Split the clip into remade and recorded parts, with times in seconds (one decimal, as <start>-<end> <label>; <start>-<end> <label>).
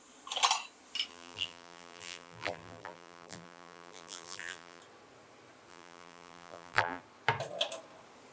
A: 0.0-1.1 recorded; 1.1-4.8 remade; 4.8-5.7 recorded; 5.7-7.0 remade; 7.0-8.3 recorded